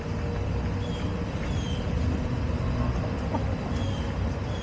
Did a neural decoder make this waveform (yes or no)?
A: no